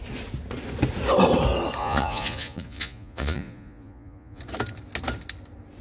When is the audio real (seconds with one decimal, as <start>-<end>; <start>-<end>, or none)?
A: 0.0-1.8; 4.4-5.8